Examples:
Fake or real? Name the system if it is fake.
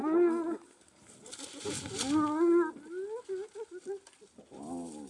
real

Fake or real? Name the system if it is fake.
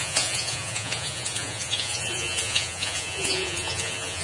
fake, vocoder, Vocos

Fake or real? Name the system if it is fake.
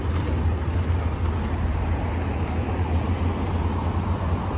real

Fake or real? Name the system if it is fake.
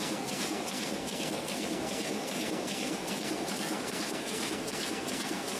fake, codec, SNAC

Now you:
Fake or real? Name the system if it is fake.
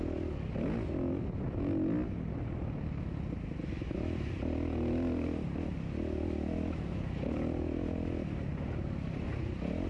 real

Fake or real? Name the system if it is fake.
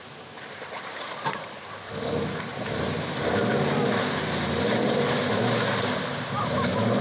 fake, vocoder, BigVGAN v2